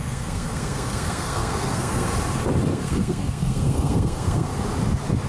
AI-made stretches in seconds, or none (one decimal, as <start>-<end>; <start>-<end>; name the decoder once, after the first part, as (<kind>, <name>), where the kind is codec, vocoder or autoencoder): 0.0-2.1 (codec, SNAC); 2.7-4.5